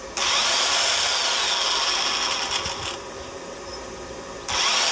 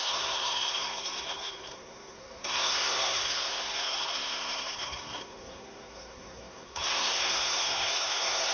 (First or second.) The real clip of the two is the first